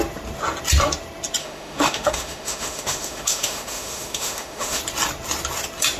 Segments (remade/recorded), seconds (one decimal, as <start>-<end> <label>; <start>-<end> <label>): 0.0-1.4 recorded; 1.4-4.8 remade; 4.8-6.0 recorded

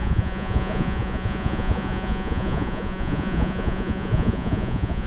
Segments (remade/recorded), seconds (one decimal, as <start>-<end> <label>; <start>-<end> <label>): 0.0-5.1 remade

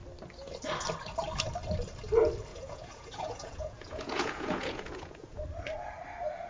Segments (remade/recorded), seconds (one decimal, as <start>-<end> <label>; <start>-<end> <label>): 0.0-2.5 recorded; 2.5-5.4 remade; 5.4-6.5 recorded

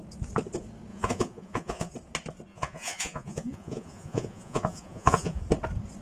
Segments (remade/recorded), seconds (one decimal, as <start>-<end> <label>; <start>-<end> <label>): 0.0-0.9 recorded; 0.9-1.9 remade; 1.9-2.5 recorded; 2.5-5.4 remade; 5.4-6.0 recorded